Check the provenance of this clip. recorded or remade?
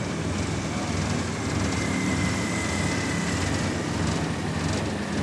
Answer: recorded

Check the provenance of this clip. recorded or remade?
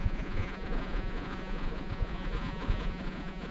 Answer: remade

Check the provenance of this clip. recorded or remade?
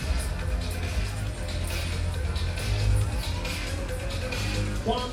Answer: recorded